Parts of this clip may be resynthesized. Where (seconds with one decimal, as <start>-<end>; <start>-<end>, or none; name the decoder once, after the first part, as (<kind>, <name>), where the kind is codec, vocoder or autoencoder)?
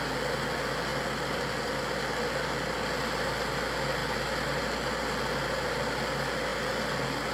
none